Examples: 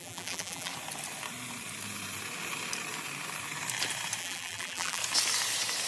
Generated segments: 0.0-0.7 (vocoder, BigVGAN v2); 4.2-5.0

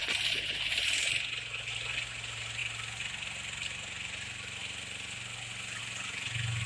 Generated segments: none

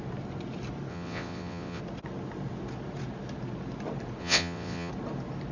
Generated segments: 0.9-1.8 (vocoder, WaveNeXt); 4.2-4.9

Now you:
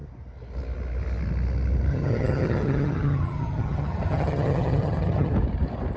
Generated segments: 1.9-5.3 (vocoder, HiFi-GAN)